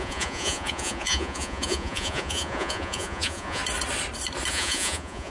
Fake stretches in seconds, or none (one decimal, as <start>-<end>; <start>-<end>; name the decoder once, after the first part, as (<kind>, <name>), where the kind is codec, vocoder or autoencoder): 0.0-3.6 (vocoder, Vocos); 4.5-5.3